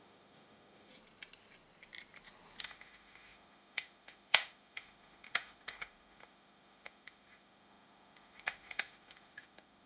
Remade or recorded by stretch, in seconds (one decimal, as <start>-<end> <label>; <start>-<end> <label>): 0.0-0.9 remade; 0.9-2.6 recorded; 2.6-9.9 remade